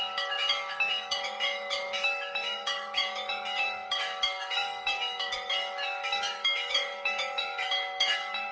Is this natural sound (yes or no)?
no